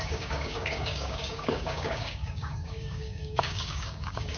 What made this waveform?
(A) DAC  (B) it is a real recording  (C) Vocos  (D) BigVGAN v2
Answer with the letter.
A